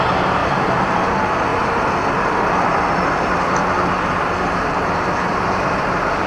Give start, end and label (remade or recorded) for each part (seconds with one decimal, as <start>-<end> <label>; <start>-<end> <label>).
0.0-0.4 recorded; 0.4-1.0 remade; 1.0-3.6 recorded; 3.6-5.8 remade; 5.8-6.3 recorded